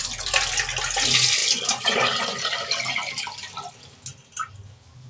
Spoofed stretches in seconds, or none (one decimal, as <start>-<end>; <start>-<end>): none